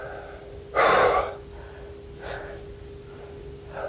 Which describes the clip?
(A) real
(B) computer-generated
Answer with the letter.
A